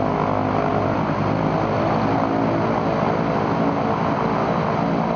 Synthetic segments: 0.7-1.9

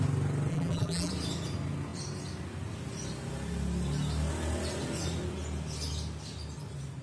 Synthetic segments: 0.5-1.1